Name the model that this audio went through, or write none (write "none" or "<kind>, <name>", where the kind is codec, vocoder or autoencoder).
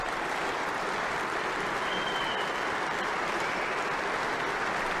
none